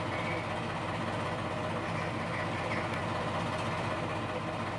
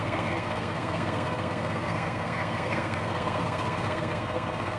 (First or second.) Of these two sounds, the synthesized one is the second